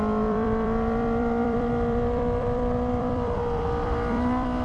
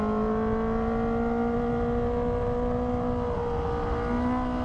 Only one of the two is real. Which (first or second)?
second